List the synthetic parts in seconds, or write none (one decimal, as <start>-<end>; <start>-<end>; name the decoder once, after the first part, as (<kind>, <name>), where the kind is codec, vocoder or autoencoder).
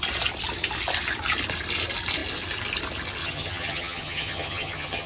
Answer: 3.2-5.1 (vocoder, HiFi-GAN)